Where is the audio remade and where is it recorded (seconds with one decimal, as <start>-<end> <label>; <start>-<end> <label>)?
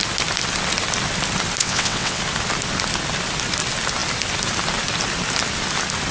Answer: 0.0-1.6 recorded; 1.6-2.2 remade; 2.2-6.1 recorded